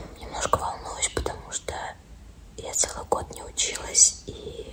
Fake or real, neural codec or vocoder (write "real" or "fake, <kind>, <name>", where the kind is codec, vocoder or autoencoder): fake, vocoder, BigVGAN v2